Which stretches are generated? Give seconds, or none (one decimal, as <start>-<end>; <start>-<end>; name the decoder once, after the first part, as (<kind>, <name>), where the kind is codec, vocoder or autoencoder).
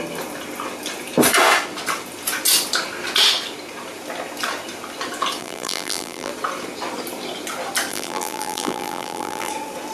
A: 5.4-6.3 (vocoder, BigVGAN v2); 7.9-9.5